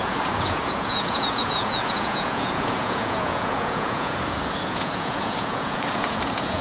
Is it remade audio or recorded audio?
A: remade